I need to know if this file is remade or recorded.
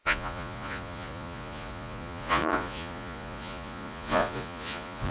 remade